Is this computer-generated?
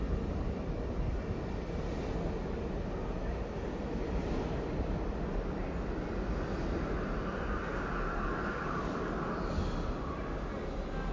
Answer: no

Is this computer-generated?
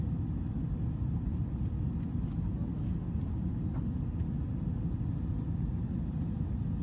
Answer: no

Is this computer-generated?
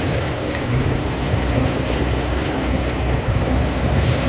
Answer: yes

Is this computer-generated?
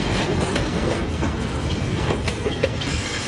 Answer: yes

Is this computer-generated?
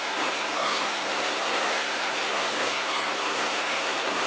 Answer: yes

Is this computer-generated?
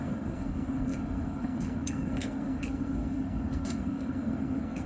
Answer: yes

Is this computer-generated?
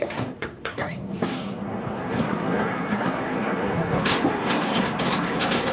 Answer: yes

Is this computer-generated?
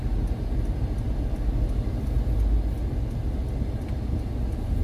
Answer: no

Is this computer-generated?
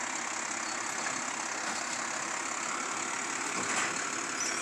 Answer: no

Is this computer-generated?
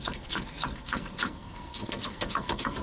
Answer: yes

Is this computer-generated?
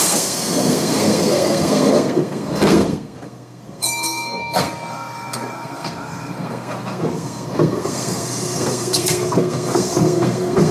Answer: yes